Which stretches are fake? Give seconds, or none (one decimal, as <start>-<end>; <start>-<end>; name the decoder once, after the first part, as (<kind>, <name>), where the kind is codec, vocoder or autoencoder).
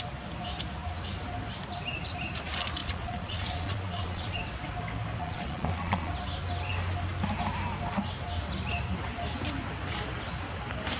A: 2.8-4.4 (vocoder, Vocos); 5.2-6.1